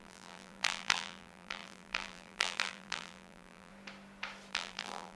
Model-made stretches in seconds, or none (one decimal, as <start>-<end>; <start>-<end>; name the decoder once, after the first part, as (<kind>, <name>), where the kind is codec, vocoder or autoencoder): 0.0-3.7 (vocoder, BigVGAN v2); 4.5-5.2